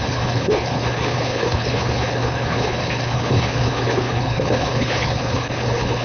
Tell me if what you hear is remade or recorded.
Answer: remade